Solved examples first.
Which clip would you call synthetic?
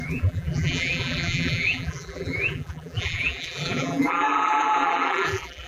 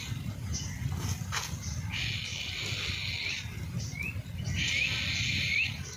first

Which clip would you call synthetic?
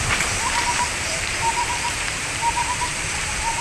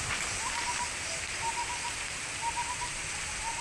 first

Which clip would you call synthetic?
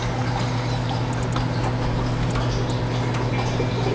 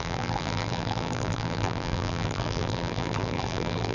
second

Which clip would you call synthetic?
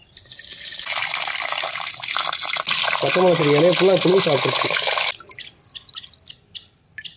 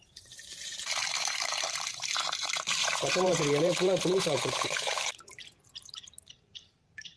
second